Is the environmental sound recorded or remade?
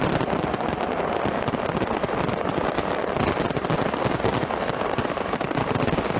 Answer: recorded